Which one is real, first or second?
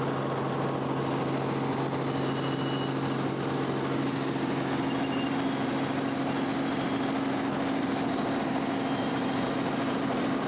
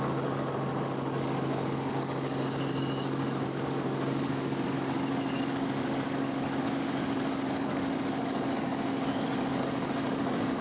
first